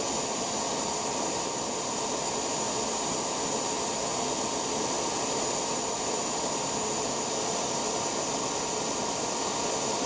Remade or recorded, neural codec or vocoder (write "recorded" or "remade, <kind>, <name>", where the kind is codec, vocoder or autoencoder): recorded